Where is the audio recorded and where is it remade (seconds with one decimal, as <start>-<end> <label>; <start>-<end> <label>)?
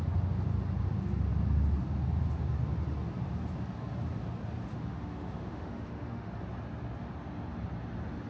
0.0-4.7 recorded; 4.7-6.3 remade; 6.3-8.3 recorded